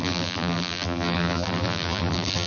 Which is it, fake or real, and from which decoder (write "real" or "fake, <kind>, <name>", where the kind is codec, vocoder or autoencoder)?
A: fake, vocoder, BigVGAN v2